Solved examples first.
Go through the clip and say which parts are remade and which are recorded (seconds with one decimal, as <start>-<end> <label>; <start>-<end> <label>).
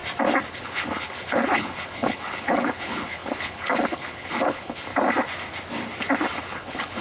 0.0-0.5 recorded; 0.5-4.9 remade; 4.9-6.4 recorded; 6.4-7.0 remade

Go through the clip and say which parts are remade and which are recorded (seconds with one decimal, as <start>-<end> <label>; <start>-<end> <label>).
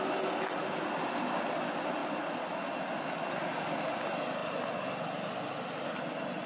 0.0-6.5 recorded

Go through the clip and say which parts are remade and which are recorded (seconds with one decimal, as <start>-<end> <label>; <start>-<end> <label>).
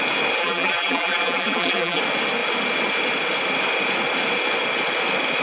0.0-0.4 recorded; 0.4-2.0 remade; 2.0-5.4 recorded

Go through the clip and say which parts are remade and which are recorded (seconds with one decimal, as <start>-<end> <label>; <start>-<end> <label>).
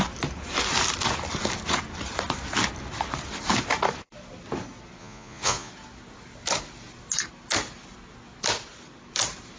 0.0-5.0 recorded; 5.0-5.7 remade; 5.7-9.6 recorded